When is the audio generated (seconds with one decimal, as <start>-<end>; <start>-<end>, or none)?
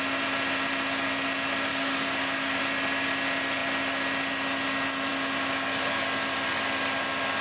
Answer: 1.7-2.6